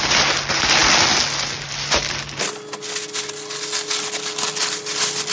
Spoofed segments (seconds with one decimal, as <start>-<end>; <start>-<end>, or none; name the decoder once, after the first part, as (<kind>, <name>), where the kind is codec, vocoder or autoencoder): none

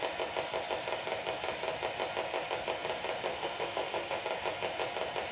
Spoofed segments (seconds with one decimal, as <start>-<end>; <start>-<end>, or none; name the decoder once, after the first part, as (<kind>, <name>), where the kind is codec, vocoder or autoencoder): 3.3-4.2 (autoencoder, DAC-VAE)